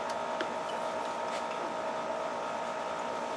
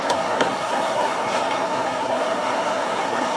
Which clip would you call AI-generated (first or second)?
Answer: second